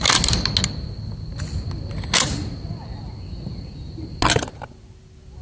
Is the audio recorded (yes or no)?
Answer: yes